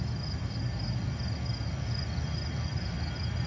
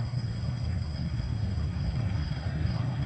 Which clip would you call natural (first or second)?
first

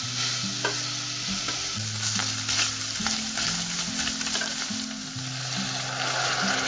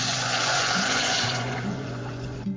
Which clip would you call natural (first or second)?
first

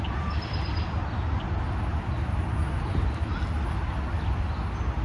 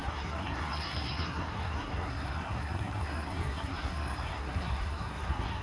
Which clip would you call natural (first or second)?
first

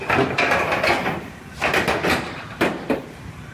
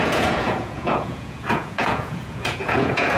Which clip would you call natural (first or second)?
first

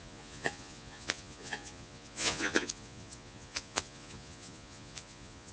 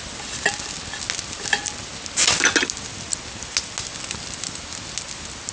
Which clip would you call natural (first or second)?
second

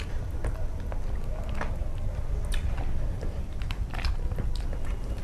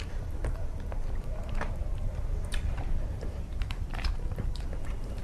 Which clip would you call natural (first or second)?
first